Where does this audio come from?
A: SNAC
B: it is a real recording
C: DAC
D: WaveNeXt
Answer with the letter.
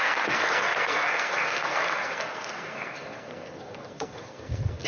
A